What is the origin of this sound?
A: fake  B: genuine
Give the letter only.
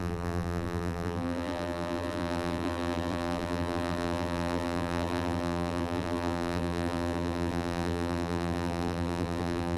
A